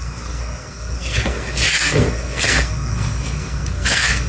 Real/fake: fake